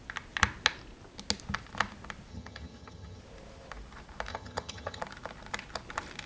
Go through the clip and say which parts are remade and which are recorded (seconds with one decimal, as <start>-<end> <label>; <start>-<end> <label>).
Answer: 0.0-2.3 recorded; 2.3-3.2 remade; 3.2-4.3 recorded; 4.3-5.0 remade; 5.0-6.3 recorded